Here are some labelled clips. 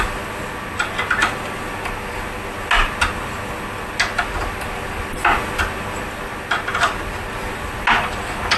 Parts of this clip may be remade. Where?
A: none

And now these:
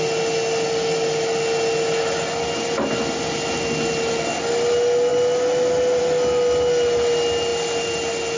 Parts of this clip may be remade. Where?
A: none